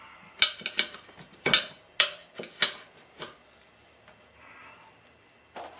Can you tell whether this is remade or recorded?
recorded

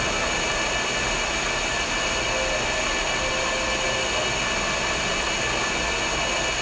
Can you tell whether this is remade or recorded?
recorded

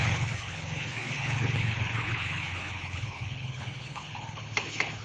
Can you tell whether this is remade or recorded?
remade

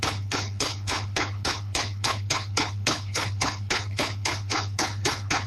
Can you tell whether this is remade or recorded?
remade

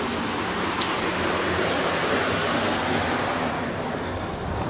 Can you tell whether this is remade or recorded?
recorded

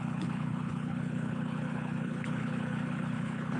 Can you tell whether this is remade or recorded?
remade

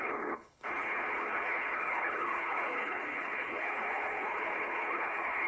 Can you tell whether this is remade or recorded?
remade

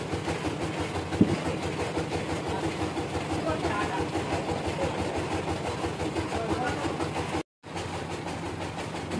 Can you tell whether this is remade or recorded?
recorded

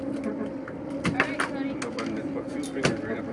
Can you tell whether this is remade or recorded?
recorded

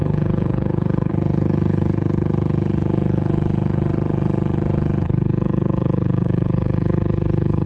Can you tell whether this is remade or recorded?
remade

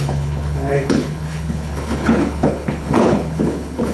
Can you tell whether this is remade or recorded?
remade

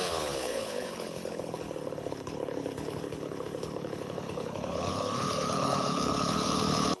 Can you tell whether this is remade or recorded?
remade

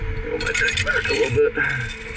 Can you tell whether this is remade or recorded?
recorded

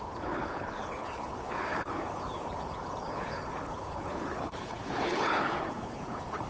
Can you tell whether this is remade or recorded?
remade